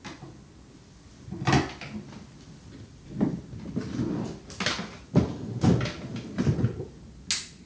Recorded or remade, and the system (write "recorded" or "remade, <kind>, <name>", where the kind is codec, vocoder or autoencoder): recorded